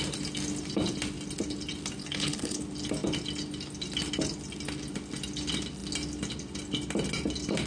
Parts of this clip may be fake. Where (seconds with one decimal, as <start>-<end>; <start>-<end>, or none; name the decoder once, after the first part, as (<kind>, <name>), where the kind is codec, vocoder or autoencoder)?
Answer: 2.0-2.6 (codec, HILCodec)